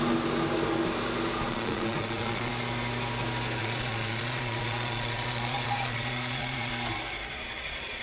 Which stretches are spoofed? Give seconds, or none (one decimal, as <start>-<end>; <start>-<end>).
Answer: 1.5-2.5; 3.6-6.7; 7.3-8.0